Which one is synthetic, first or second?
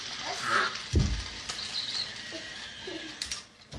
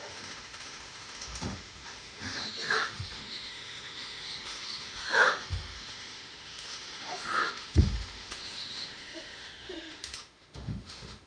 second